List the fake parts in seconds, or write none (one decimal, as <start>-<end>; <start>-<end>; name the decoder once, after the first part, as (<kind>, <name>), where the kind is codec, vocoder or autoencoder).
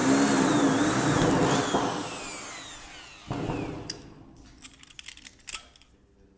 none